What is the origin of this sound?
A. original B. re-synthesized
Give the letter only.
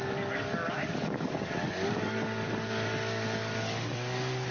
B